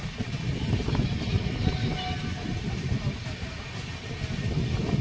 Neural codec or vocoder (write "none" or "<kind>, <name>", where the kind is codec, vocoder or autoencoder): none